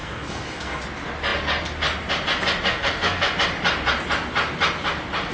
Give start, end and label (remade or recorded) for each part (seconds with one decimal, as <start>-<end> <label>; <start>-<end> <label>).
0.0-0.8 remade; 0.8-2.7 recorded; 2.7-3.3 remade; 3.3-5.3 recorded